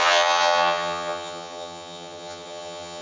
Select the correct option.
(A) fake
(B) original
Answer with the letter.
A